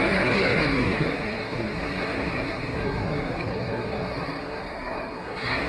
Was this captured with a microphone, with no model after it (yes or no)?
no